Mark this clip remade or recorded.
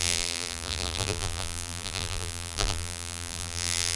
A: remade